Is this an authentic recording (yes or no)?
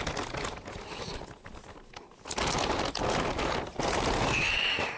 yes